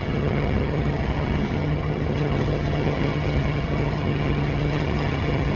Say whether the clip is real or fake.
fake